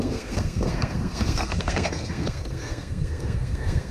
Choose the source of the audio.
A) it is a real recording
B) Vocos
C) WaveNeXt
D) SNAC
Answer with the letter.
D